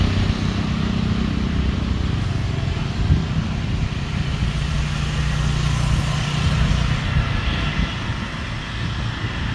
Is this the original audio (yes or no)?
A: yes